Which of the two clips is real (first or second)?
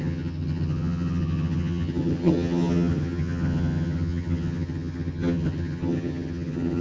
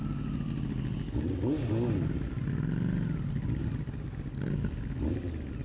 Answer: second